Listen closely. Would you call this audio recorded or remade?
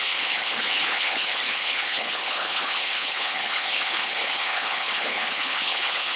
remade